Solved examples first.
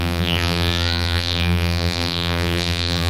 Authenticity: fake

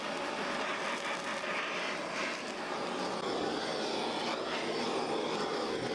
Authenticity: real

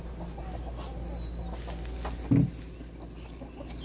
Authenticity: real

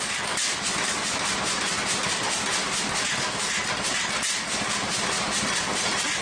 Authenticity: real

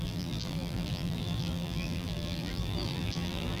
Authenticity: fake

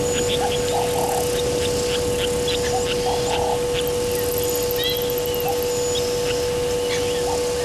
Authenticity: real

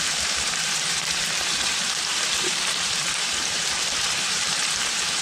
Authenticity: fake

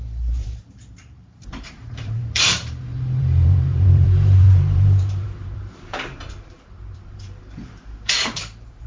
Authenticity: fake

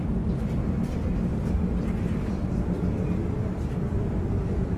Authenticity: real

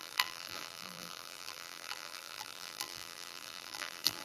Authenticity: fake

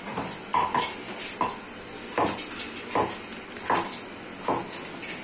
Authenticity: real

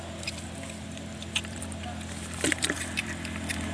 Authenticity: fake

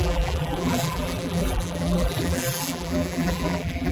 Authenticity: fake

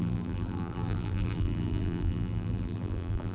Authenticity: fake